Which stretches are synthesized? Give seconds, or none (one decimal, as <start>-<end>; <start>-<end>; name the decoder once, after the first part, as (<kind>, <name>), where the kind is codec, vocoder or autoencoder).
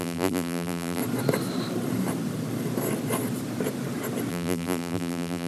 0.0-1.0 (vocoder, BigVGAN v2); 4.3-5.5